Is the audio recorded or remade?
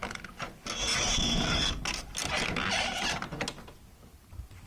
recorded